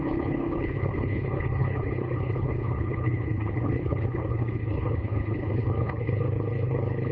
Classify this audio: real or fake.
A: fake